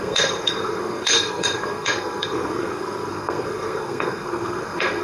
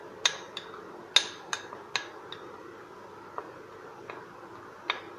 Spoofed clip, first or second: first